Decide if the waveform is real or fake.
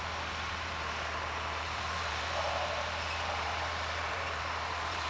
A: fake